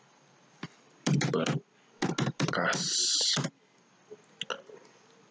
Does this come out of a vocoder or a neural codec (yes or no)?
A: no